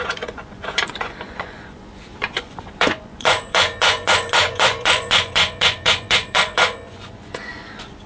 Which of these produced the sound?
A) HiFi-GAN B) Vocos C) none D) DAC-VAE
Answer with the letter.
B